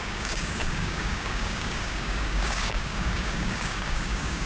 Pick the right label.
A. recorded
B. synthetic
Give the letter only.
B